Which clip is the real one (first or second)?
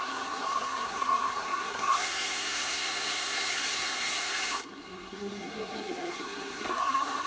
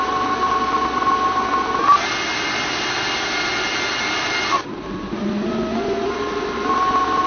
second